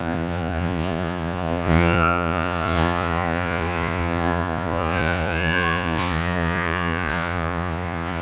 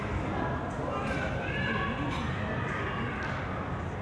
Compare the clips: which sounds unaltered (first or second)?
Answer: second